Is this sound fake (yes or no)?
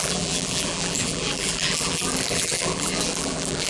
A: yes